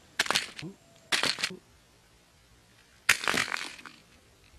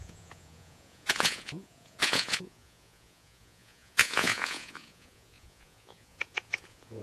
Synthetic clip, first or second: second